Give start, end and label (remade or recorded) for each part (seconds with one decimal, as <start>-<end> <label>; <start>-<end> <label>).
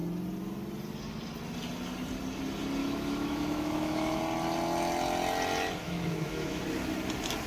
0.0-2.8 recorded; 2.8-4.2 remade; 4.2-5.8 recorded; 5.8-6.6 remade; 6.6-7.5 recorded